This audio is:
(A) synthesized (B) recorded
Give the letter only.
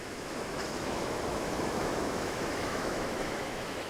A